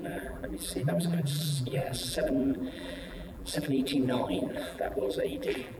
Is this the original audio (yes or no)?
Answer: no